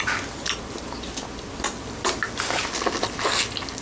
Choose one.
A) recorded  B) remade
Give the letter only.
A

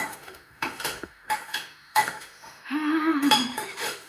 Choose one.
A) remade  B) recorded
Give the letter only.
A